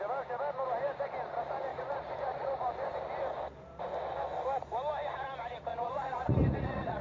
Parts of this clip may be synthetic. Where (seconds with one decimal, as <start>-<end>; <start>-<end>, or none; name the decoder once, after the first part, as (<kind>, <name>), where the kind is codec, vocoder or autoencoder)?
1.7-2.5 (vocoder, Vocos); 5.7-7.0